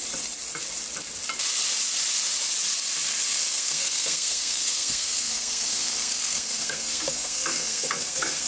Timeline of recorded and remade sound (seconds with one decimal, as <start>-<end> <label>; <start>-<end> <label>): 0.0-3.3 recorded; 3.3-8.5 remade